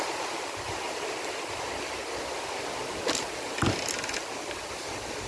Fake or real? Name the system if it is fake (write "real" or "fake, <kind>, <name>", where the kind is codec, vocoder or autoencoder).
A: real